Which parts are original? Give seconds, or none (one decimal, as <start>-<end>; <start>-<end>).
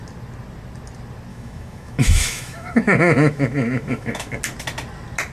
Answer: 0.0-1.3; 4.4-5.3